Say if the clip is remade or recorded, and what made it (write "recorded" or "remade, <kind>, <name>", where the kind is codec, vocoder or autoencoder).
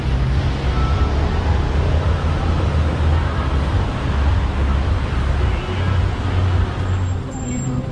recorded